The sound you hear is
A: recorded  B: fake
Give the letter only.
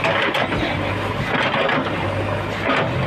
A